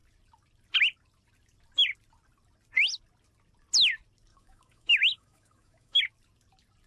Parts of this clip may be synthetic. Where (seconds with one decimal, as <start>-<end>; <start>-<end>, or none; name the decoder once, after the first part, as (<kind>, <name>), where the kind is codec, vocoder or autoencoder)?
4.3-6.0 (autoencoder, DAC-VAE)